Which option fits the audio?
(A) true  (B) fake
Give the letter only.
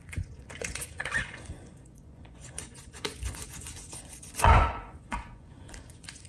B